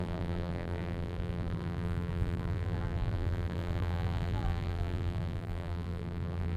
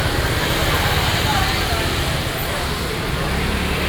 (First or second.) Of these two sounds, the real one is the second